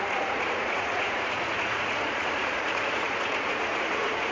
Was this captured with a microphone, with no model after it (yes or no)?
no